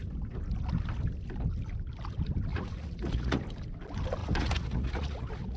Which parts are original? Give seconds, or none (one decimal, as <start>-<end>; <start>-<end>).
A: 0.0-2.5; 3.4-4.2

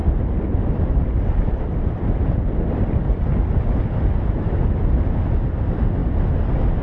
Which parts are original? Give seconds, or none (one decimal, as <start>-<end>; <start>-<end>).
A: 3.9-6.8

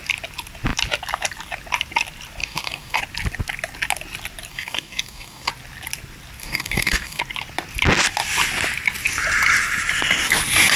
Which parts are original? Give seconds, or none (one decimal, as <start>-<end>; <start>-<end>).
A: 0.0-2.4; 3.0-4.5; 5.5-6.4; 7.2-10.8